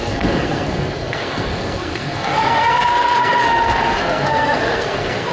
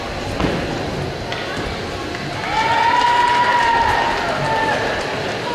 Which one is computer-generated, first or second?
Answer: first